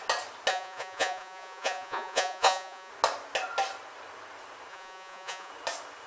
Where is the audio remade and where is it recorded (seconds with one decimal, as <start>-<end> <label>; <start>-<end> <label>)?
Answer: 0.0-0.5 recorded; 0.5-2.9 remade; 2.9-4.7 recorded; 4.7-5.5 remade; 5.5-6.1 recorded